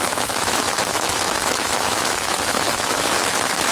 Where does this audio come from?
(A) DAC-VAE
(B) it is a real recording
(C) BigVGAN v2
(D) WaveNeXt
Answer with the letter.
A